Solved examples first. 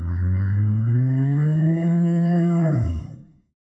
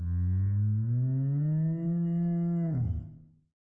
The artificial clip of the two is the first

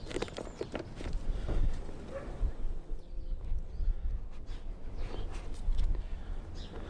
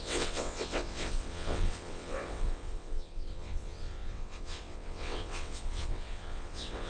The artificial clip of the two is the second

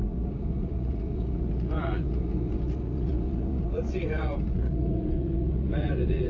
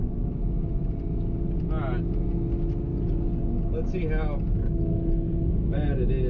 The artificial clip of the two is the first